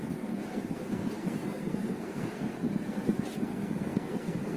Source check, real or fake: fake